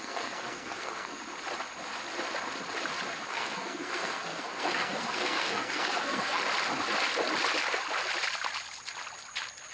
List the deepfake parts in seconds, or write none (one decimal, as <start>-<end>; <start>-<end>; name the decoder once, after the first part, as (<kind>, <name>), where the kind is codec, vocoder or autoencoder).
0.0-1.2 (codec, SNAC); 3.3-6.4